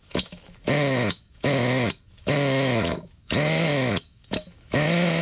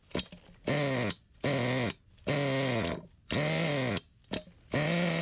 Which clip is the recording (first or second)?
second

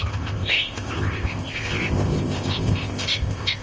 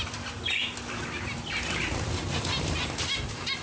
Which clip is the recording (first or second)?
second